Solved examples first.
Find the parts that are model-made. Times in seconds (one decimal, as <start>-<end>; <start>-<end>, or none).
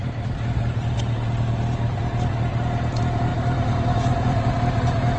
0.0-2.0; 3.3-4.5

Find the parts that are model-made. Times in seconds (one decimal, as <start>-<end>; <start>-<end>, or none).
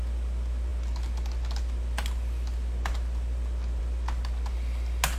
none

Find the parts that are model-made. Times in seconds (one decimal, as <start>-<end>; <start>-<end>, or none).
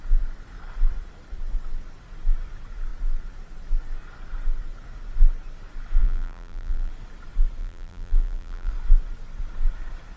6.0-6.9; 7.6-8.7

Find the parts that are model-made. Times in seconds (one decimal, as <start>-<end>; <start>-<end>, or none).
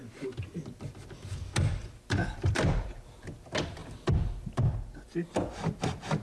1.8-3.2; 3.8-5.3